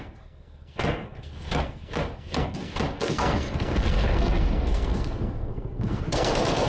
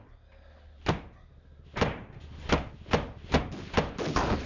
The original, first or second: second